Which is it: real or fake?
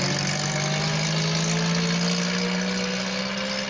real